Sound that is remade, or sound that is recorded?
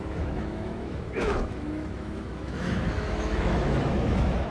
remade